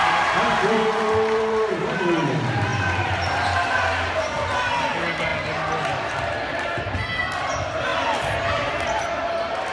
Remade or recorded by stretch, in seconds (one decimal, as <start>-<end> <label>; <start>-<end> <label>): 0.0-2.0 remade; 2.0-2.7 recorded; 2.7-3.8 remade; 3.8-7.9 recorded; 7.9-8.7 remade; 8.7-9.7 recorded